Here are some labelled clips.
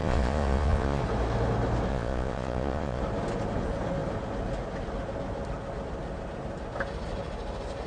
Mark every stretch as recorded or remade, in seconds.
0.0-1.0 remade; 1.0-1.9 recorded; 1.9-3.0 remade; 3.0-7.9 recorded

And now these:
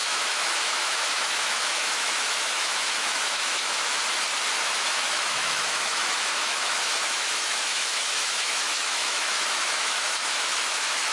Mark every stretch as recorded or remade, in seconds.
0.0-4.0 remade; 4.0-4.6 recorded; 4.6-11.1 remade

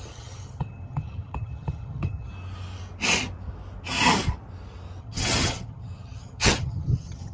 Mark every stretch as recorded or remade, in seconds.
0.0-2.3 remade; 2.3-5.0 recorded; 5.0-7.3 remade